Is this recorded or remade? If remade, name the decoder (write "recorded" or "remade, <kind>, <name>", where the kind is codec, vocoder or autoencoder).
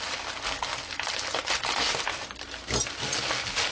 recorded